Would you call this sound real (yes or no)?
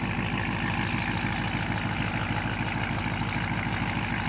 yes